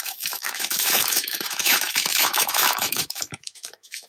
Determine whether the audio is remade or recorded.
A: remade